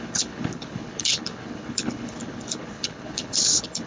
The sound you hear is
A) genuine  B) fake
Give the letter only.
B